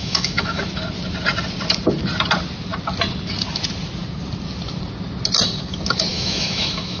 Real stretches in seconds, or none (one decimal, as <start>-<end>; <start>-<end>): 0.6-6.1